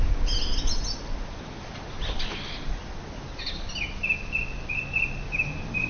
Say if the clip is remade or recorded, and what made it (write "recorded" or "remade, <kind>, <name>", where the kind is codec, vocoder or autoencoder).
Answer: recorded